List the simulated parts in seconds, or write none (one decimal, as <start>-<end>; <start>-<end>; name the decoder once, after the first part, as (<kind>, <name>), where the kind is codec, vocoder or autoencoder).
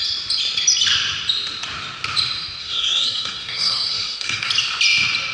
2.6-4.5 (codec, SNAC)